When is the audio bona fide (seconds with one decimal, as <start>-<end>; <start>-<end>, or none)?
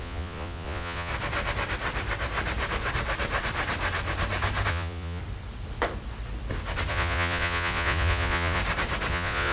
1.1-4.7; 5.2-6.9; 8.6-9.1